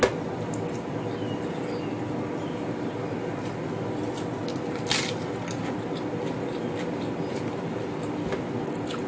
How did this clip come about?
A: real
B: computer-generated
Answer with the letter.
A